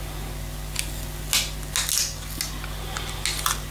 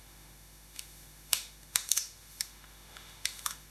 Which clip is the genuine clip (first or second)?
first